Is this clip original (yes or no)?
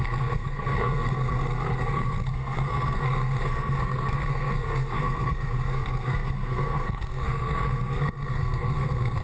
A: no